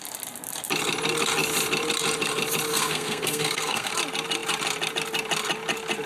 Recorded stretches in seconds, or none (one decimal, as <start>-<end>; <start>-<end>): 0.0-2.7; 3.9-6.1